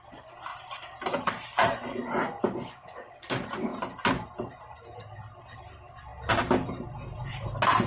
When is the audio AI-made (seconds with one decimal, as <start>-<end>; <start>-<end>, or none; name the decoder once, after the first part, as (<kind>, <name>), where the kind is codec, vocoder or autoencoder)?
0.5-2.1 (vocoder, BigVGAN v2)